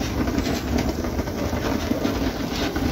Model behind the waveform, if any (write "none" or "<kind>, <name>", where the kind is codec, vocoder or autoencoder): none